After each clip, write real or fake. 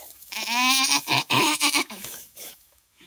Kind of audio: fake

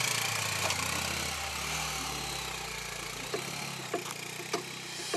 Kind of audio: real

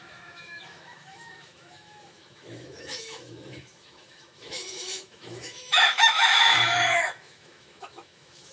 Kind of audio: fake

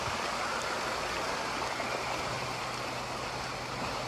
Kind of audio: real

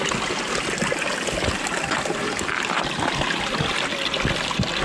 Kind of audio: real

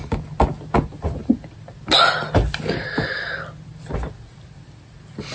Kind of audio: real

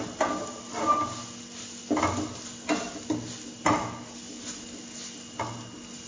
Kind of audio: real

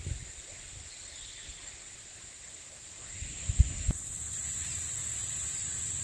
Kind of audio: real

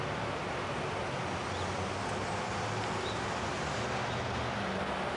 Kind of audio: real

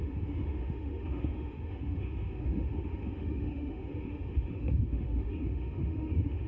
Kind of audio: fake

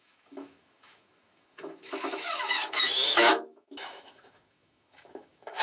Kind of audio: fake